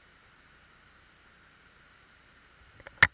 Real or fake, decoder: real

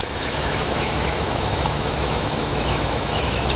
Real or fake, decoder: fake, autoencoder, DAC-VAE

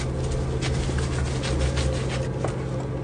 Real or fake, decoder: real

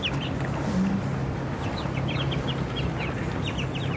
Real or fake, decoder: real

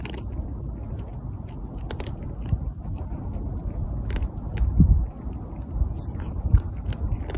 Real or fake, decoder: real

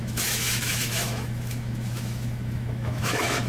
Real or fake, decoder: fake, autoencoder, DAC-VAE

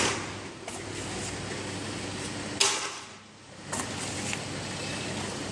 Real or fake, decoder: real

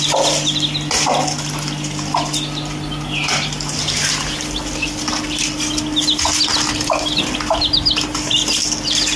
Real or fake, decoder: real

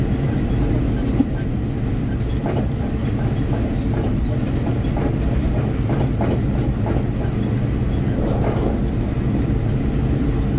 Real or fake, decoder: real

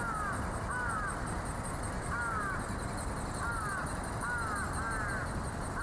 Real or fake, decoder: real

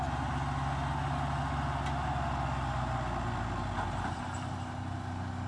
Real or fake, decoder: real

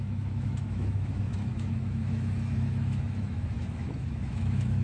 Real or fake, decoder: fake, autoencoder, DAC-VAE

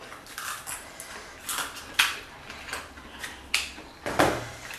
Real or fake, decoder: real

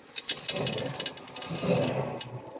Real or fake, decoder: real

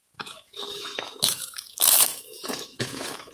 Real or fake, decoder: fake, autoencoder, DAC-VAE